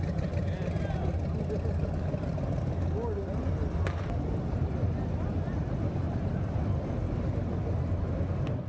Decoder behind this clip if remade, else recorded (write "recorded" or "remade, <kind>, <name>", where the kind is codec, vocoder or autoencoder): recorded